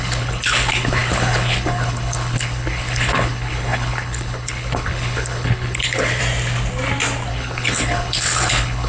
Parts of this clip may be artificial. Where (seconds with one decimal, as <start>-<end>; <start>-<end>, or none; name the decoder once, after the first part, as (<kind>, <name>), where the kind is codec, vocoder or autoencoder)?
0.0-6.2 (codec, HILCodec); 7.3-8.9